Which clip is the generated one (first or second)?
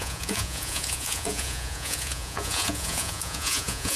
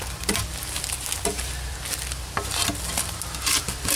first